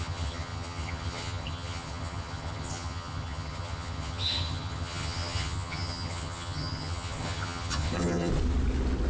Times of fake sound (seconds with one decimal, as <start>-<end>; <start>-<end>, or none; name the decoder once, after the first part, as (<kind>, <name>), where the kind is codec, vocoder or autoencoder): 0.0-8.3 (vocoder, HiFi-GAN)